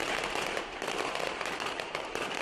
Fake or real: fake